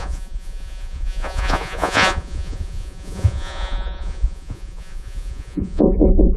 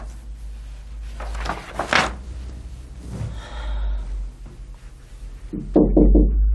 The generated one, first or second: first